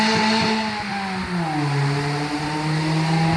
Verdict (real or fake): real